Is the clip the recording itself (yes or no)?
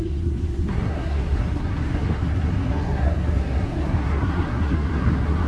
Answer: no